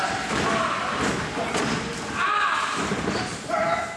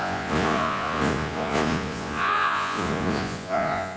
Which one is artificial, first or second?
second